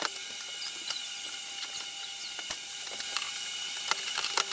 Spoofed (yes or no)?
no